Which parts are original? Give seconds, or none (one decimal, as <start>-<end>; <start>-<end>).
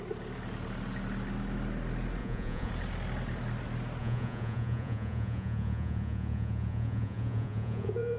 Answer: 0.0-2.2; 2.7-4.0